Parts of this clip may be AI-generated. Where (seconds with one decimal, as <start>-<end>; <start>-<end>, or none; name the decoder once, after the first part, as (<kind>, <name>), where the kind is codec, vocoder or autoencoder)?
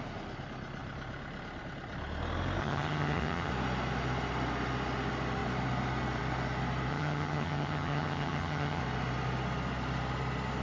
2.6-3.5 (vocoder, HiFi-GAN); 6.9-8.8